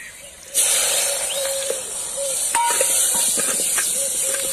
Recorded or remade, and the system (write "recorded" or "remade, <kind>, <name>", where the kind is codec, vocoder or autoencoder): remade, vocoder, BigVGAN v2